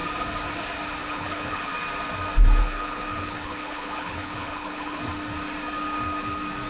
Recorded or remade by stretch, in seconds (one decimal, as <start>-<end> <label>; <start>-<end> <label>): 0.0-1.0 recorded; 1.0-1.7 remade; 1.7-2.6 recorded; 2.6-5.0 remade; 5.0-6.7 recorded